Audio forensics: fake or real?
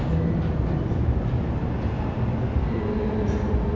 real